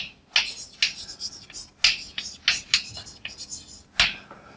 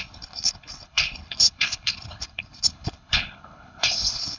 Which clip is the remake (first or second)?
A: second